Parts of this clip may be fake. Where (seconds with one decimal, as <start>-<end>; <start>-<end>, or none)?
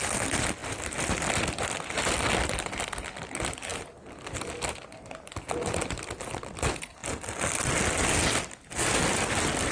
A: none